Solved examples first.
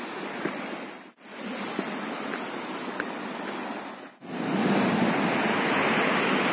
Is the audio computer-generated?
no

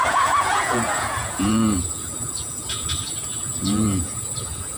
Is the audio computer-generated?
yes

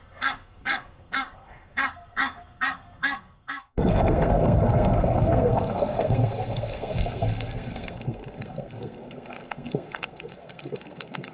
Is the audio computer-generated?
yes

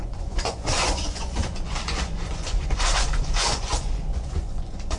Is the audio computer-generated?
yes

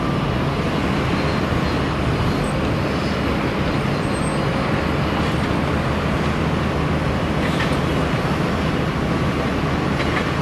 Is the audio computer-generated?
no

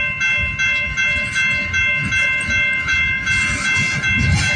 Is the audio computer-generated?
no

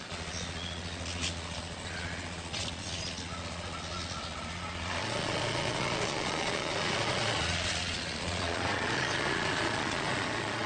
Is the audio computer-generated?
yes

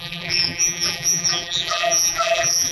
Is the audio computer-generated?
yes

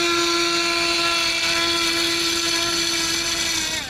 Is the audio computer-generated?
no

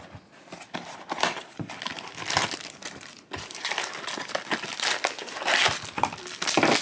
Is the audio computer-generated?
no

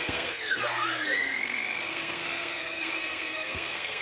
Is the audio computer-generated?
yes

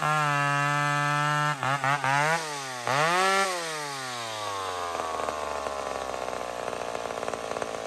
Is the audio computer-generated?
no